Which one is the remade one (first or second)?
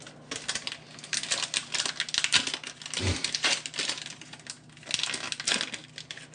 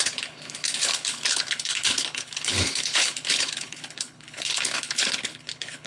second